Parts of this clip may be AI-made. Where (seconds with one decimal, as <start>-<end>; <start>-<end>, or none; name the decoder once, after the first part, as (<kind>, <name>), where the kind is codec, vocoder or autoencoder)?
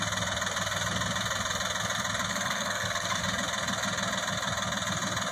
2.3-3.2 (codec, SNAC)